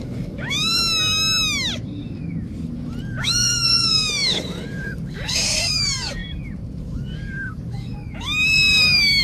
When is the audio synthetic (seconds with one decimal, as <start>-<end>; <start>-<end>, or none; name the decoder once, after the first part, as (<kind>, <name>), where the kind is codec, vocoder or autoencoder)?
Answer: 0.0-0.8 (codec, DAC); 3.2-6.2; 6.8-9.2

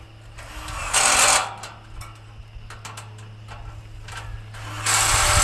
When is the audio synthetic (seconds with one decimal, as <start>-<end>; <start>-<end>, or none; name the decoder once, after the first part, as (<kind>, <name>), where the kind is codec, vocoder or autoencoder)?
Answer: none

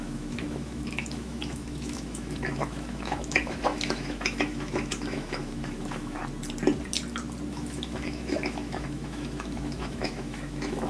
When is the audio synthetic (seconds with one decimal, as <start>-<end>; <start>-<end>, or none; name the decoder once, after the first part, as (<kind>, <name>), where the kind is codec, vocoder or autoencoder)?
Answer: 0.0-6.2 (autoencoder, DAC-VAE); 7.5-10.9